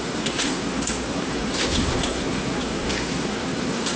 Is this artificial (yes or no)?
yes